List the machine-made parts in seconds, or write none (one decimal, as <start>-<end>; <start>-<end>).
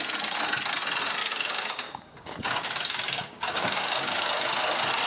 1.2-4.3